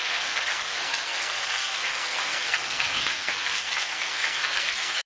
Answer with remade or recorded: remade